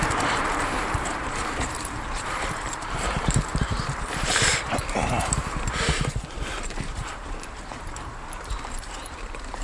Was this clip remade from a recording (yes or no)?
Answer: yes